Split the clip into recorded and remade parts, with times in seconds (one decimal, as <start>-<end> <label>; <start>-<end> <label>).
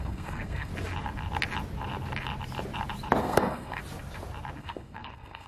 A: 0.0-0.7 remade; 0.7-3.2 recorded; 3.2-3.8 remade; 3.8-4.6 recorded; 4.6-5.5 remade